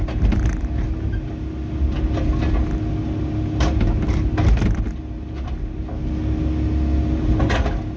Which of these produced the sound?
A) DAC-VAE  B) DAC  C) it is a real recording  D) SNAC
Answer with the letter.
C